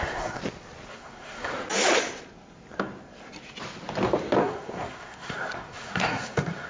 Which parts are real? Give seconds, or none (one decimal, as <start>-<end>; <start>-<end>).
0.4-0.9; 1.5-4.4